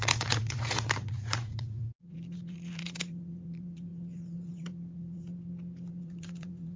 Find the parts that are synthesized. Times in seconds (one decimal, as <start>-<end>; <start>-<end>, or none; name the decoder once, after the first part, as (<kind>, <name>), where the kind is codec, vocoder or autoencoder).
0.0-5.3 (vocoder, Vocos); 5.9-6.8